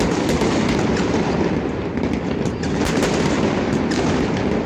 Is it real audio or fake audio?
real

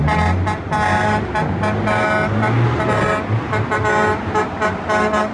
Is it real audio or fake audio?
real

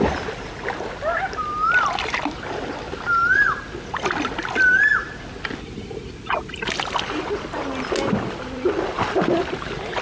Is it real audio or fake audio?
real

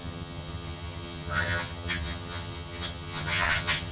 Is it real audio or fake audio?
fake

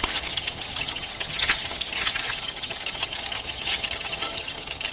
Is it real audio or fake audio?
fake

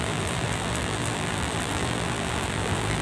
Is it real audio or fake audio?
fake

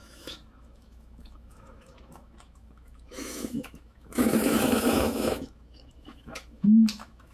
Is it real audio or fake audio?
fake